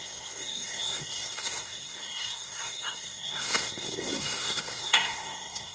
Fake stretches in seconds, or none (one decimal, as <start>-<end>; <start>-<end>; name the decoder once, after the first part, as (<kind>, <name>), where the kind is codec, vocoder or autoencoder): 0.0-5.7 (codec, SNAC)